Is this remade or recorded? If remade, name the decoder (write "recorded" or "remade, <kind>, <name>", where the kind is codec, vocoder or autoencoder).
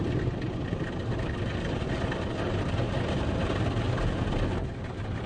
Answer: remade, vocoder, BigVGAN v2